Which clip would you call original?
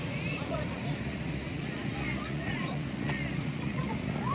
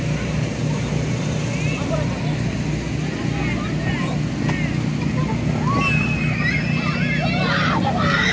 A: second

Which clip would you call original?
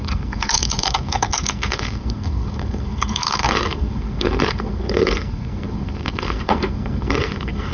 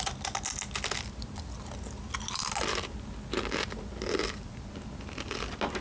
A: second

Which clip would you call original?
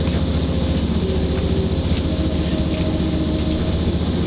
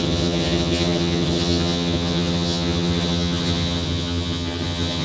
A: first